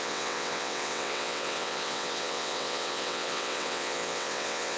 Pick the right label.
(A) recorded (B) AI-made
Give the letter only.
B